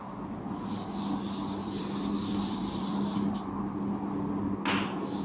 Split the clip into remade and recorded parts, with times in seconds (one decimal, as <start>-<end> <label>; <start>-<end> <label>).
0.0-1.6 recorded; 1.6-3.3 remade; 3.3-5.2 recorded